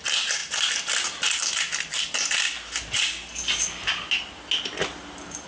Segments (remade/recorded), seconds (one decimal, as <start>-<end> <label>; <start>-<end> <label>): 0.0-5.5 recorded